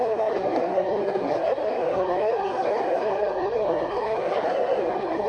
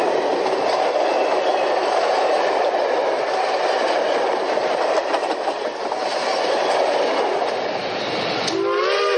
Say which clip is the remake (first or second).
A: first